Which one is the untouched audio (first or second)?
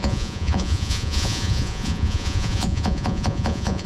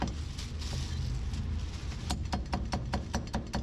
second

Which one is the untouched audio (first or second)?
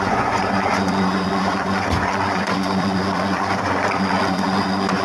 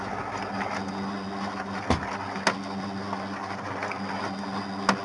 second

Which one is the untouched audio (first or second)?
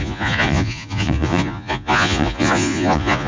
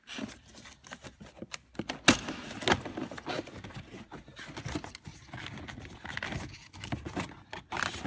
second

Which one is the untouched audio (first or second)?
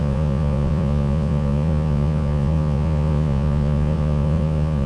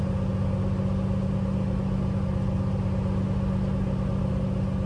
second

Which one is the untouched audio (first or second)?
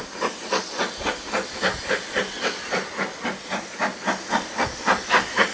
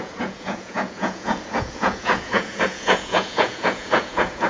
first